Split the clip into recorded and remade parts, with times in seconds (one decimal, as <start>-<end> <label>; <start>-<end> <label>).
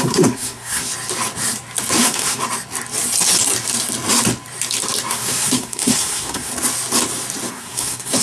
0.0-0.9 remade; 0.9-2.0 recorded; 2.0-2.4 remade; 2.4-5.1 recorded; 5.1-6.5 remade; 6.5-7.5 recorded; 7.5-8.2 remade